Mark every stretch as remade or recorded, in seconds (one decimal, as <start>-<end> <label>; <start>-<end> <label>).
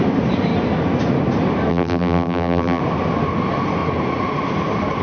0.0-1.7 recorded; 1.7-2.8 remade; 2.8-5.0 recorded